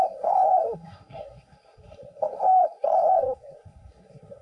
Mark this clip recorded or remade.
remade